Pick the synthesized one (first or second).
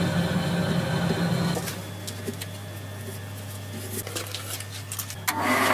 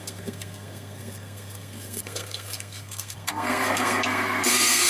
second